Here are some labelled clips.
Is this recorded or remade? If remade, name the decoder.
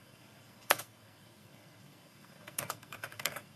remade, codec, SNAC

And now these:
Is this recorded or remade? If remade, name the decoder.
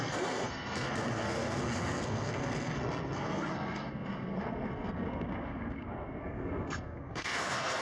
remade, codec, SNAC